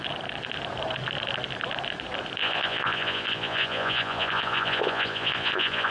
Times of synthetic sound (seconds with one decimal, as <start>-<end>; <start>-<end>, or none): 2.4-5.9